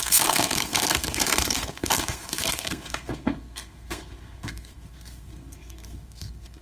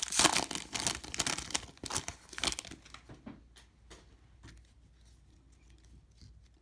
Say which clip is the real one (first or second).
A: second